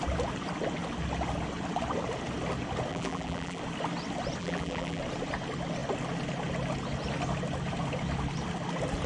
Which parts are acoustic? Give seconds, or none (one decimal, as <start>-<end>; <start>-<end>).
0.0-2.9; 3.6-4.4; 5.0-9.1